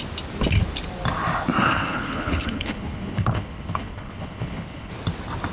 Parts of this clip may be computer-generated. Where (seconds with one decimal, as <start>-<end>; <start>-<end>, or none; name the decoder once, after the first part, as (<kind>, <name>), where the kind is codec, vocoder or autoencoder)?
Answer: 1.6-4.9 (codec, HILCodec)